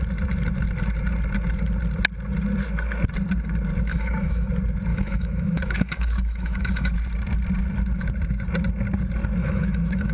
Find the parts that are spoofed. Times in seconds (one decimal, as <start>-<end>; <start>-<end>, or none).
3.9-4.5; 4.9-6.9; 9.4-10.1